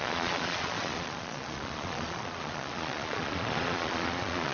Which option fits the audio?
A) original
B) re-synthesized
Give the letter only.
B